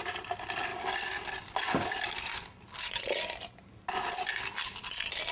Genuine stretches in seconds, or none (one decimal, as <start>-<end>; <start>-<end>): 0.0-5.3